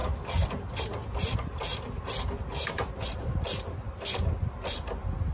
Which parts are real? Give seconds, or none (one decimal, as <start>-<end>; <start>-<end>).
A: 0.0-5.3